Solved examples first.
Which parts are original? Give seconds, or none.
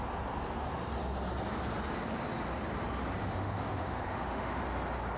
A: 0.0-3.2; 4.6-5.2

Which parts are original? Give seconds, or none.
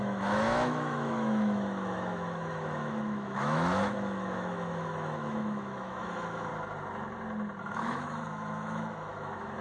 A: 6.5-7.6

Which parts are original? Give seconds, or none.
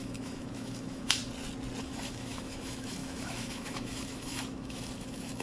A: 1.2-1.8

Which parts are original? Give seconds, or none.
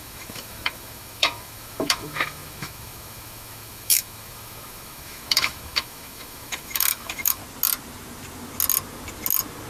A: 7.4-9.7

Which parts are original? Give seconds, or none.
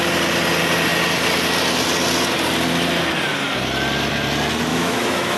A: 0.0-4.7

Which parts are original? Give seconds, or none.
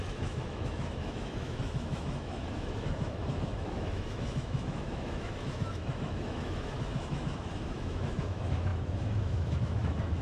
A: none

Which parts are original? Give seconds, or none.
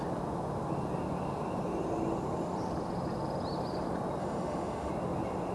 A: 0.0-4.2; 4.9-5.5